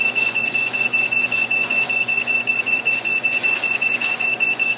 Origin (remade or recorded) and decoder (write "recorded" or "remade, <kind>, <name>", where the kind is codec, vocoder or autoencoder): remade, vocoder, Vocos